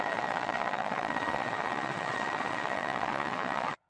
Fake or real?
fake